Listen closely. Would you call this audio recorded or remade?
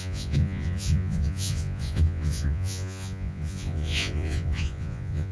remade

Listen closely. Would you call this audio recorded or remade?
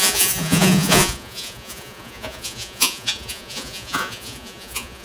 remade